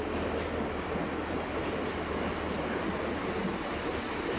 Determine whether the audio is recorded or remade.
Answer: recorded